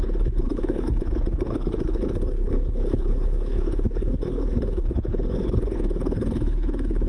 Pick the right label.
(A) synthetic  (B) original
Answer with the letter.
A